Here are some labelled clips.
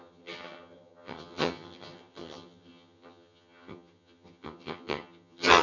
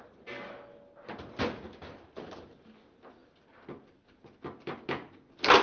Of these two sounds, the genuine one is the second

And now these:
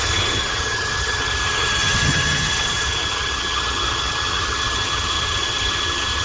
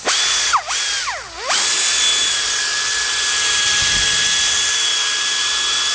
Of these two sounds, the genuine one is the second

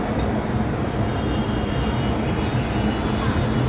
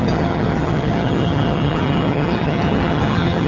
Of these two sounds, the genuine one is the first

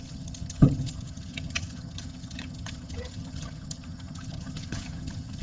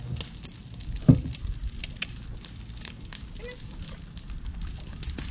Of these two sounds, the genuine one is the second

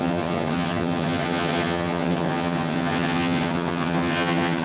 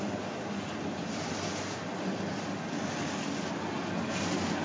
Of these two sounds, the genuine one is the second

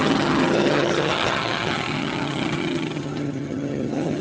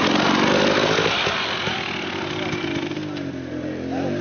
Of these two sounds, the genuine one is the second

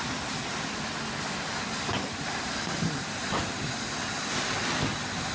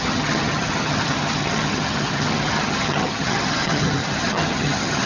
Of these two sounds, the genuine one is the first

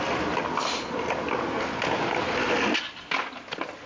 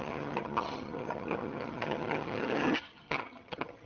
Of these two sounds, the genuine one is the first